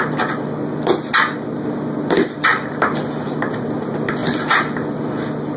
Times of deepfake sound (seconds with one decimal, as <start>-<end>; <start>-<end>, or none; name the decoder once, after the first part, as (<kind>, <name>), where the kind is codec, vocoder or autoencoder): none